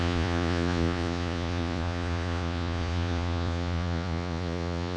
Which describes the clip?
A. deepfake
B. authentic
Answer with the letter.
A